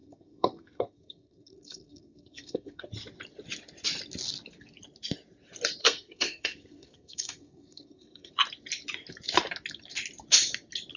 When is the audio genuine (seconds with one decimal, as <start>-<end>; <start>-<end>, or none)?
2.9-5.8; 8.3-11.0